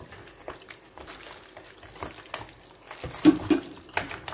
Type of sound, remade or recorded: recorded